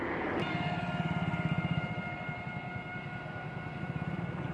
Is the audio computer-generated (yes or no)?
no